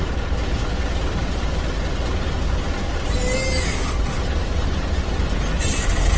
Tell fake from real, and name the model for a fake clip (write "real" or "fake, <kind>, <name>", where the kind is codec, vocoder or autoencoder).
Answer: real